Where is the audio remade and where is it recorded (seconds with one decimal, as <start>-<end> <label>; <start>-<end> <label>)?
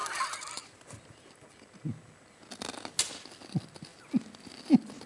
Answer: 0.0-5.1 recorded